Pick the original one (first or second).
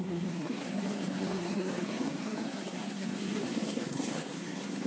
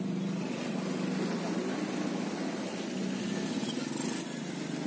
second